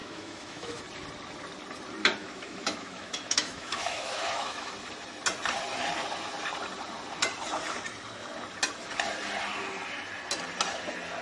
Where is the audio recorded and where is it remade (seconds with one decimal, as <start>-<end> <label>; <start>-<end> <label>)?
0.0-0.8 remade; 0.8-2.2 recorded; 2.2-4.7 remade; 4.7-11.2 recorded